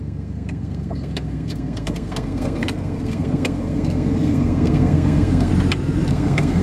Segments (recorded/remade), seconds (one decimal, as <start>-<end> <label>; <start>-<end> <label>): 0.0-5.5 remade; 5.5-6.1 recorded; 6.1-6.6 remade